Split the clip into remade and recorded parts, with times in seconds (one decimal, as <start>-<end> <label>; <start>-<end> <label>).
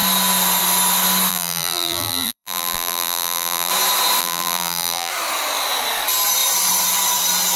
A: 0.0-1.3 recorded; 1.3-3.7 remade; 3.7-4.2 recorded; 4.2-5.1 remade; 5.1-7.6 recorded